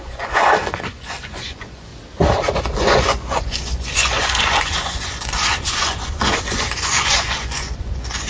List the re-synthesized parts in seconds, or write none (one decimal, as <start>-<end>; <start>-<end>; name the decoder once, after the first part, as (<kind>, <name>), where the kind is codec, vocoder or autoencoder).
0.0-1.9 (vocoder, Vocos); 2.6-8.3